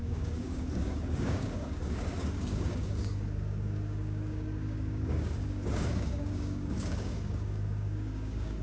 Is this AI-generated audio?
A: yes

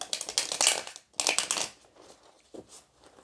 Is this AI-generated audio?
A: no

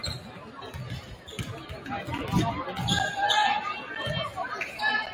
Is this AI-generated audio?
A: no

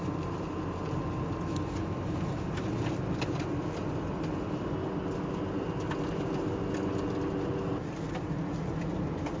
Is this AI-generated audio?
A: no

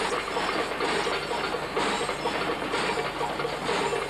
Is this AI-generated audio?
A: no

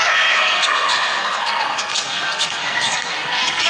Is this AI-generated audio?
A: yes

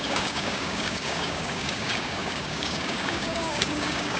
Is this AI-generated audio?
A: yes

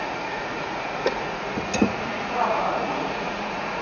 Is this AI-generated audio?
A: yes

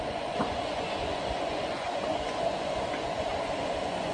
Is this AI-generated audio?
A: yes